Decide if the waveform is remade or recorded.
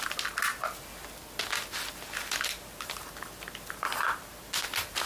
recorded